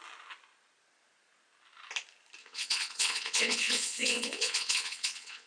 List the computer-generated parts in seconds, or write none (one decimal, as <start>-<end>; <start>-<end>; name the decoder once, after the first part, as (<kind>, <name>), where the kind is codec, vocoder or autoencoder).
2.4-5.5 (vocoder, WaveNeXt)